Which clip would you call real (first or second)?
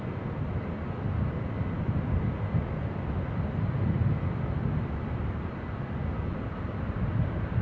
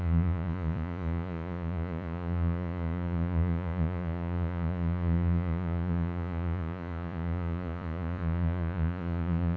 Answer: first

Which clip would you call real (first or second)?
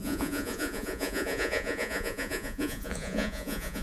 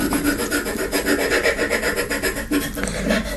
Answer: second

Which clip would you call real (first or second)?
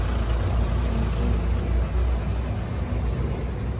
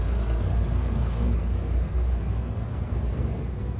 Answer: first